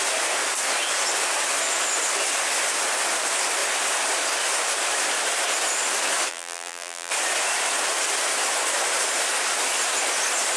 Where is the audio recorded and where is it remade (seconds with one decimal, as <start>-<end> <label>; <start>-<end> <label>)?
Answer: 0.0-6.3 recorded; 6.3-7.1 remade; 7.1-10.6 recorded